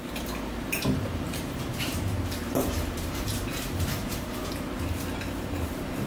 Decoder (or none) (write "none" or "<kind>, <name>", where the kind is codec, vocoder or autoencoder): vocoder, BigVGAN v2